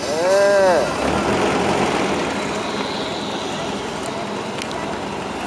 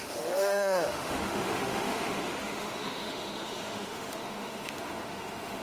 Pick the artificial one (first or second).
second